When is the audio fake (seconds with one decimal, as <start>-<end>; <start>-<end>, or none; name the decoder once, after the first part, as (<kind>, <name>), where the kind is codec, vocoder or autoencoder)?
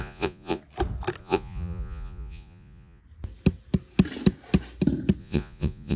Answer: 0.0-0.6 (vocoder, Vocos); 1.2-3.0; 5.2-6.0